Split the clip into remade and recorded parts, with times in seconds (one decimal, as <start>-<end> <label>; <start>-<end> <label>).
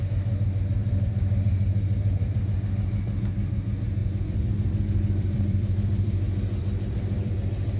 0.0-0.8 recorded; 0.8-2.4 remade; 2.4-4.0 recorded; 4.0-7.3 remade; 7.3-7.8 recorded